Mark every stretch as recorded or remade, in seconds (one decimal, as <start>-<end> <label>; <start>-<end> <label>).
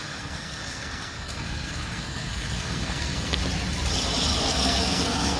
0.0-3.4 remade; 3.4-4.4 recorded; 4.4-5.4 remade